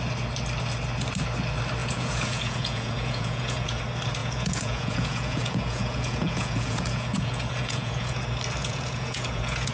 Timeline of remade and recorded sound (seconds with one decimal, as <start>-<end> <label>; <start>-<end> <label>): 0.0-1.8 recorded; 1.8-3.8 remade; 3.8-4.2 recorded; 4.2-8.2 remade; 8.2-8.6 recorded; 8.6-9.7 remade